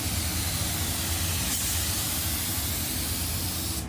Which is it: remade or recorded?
recorded